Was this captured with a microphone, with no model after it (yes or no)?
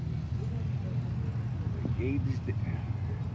yes